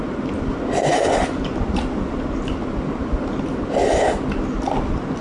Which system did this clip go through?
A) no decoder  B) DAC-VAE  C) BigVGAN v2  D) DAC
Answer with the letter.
A